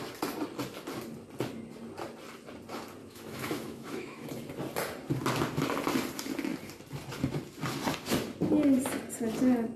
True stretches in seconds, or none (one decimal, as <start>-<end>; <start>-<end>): 0.0-3.0; 4.3-9.8

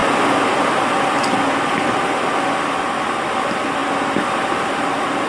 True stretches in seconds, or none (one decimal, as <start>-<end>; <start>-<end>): 0.0-5.3

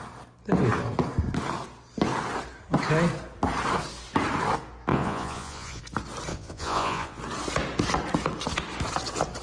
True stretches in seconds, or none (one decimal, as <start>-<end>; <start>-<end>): 0.0-4.9; 5.8-6.3; 7.2-9.4

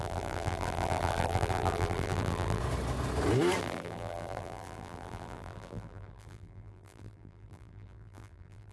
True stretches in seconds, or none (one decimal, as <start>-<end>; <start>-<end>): 2.6-3.6

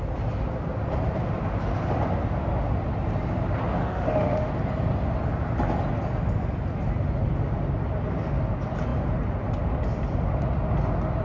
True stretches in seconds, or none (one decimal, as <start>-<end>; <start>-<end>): 0.0-3.8; 4.5-11.2